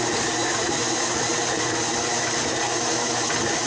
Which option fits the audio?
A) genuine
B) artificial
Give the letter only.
A